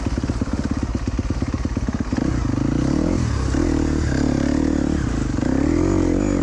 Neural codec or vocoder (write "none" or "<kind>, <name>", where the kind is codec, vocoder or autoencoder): none